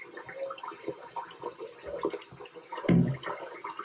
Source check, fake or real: real